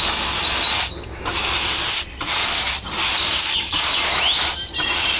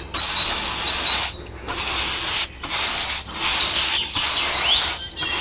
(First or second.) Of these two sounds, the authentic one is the second